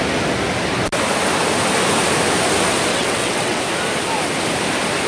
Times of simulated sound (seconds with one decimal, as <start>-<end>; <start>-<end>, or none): 2.9-3.6